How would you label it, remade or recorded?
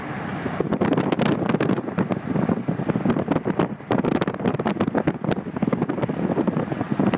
recorded